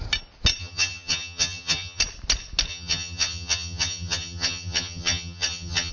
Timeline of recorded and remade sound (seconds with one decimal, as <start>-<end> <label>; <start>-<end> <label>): 0.0-0.6 recorded; 0.6-2.0 remade; 2.0-2.7 recorded; 2.7-5.9 remade